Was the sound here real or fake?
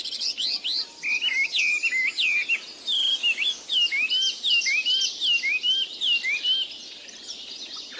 real